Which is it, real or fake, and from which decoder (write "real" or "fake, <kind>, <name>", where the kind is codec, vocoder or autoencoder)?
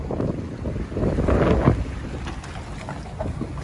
real